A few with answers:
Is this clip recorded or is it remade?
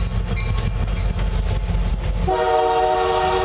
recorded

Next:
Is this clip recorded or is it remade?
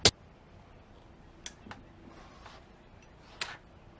recorded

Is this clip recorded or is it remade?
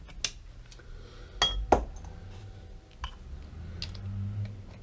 recorded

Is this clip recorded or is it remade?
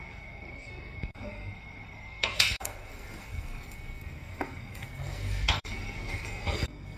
remade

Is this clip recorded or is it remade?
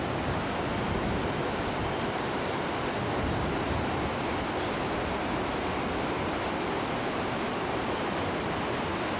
recorded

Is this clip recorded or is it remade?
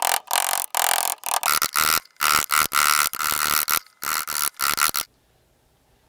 recorded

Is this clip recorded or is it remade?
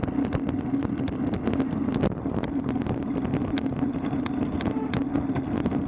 recorded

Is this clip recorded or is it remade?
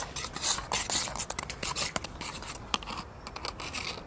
recorded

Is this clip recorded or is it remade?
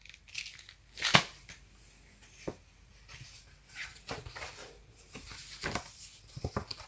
recorded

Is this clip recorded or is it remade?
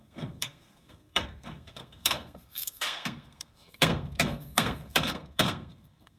remade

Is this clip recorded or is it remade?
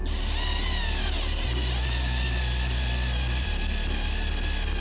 recorded